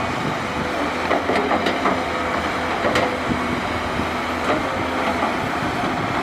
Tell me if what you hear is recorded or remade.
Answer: recorded